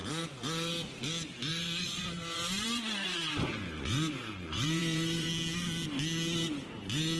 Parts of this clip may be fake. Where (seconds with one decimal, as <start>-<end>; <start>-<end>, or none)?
0.0-0.7; 1.5-5.3